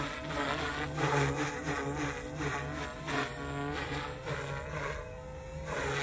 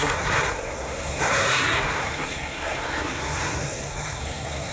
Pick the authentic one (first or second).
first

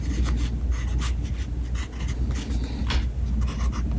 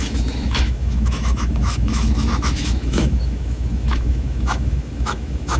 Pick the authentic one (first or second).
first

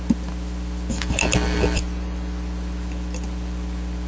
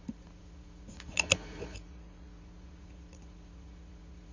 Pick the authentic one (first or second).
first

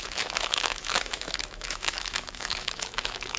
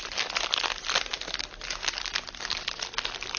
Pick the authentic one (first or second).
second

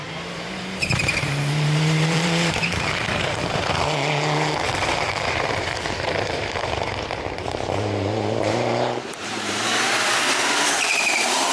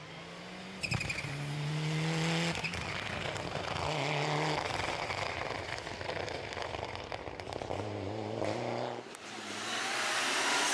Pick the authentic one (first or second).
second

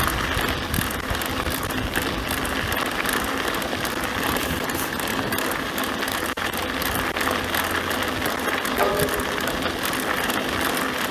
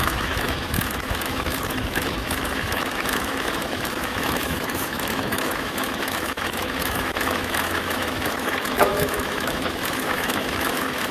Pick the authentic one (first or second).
first